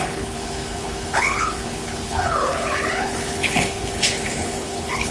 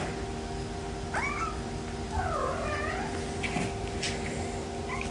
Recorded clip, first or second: second